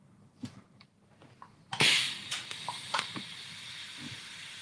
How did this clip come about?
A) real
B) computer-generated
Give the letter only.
B